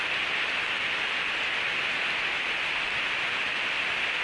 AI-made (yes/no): no